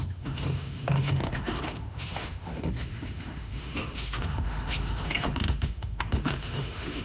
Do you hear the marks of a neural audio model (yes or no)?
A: yes